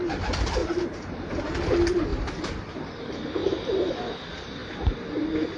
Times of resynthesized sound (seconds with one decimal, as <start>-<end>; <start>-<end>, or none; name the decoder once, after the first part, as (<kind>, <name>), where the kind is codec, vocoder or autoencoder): 0.6-1.3 (vocoder, BigVGAN v2); 2.1-4.0